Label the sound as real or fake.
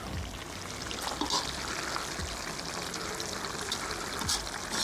real